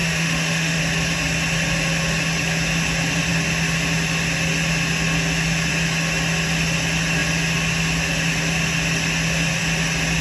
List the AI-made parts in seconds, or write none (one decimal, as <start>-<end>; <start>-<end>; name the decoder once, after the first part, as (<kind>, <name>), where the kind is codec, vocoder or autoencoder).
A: 0.0-0.8 (autoencoder, DAC-VAE)